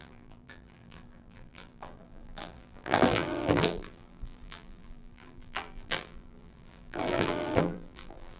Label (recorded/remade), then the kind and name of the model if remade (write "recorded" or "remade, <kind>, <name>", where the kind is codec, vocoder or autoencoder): remade, vocoder, BigVGAN v2